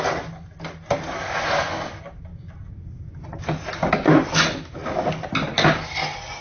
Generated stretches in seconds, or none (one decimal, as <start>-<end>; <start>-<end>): none